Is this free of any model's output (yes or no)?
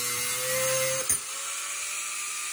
yes